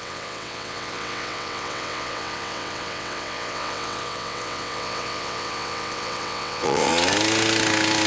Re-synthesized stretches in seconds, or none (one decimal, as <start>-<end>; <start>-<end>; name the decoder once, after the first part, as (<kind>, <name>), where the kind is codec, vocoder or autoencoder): 0.0-6.9 (vocoder, WaveNeXt)